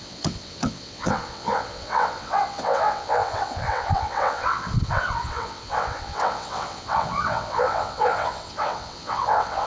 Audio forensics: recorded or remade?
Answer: remade